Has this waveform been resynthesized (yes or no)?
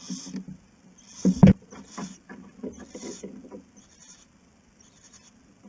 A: no